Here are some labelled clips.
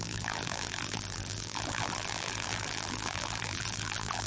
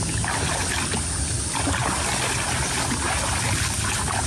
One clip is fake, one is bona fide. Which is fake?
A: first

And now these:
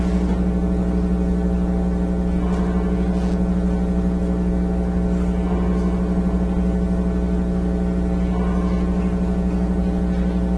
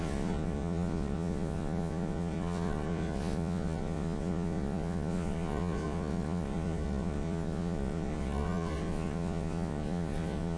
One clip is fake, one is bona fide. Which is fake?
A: second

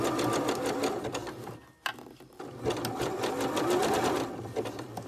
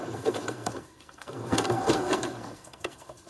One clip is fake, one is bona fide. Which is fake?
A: second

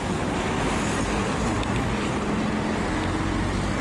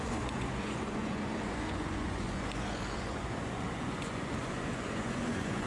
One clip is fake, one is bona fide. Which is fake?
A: second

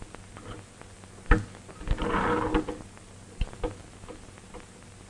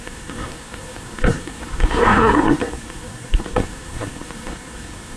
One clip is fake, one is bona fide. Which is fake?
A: second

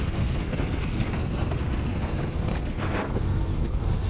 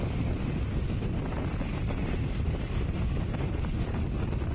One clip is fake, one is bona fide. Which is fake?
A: first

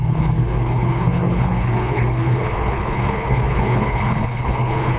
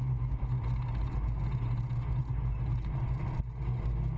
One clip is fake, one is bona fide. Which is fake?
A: first